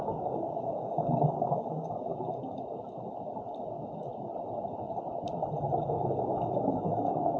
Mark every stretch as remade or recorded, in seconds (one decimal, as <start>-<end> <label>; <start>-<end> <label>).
0.0-2.1 remade; 2.1-5.8 recorded; 5.8-7.4 remade